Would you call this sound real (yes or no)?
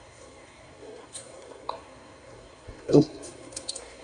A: no